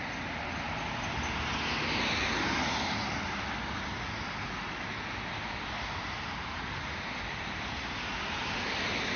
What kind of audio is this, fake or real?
real